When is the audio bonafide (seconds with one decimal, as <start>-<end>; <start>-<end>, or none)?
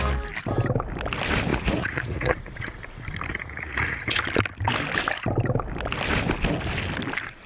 0.0-1.5; 2.8-3.3; 4.2-7.5